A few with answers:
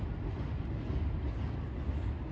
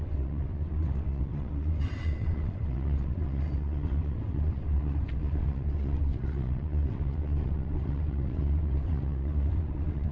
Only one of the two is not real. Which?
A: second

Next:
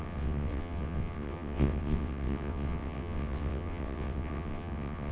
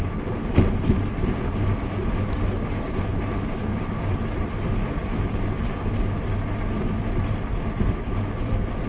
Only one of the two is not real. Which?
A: first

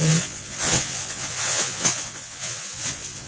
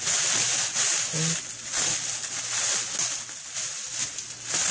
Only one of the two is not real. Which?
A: first